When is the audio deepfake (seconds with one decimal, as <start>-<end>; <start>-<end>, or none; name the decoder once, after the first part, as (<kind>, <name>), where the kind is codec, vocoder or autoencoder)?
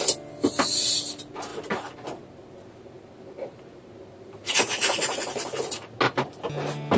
4.4-5.4 (vocoder, Vocos)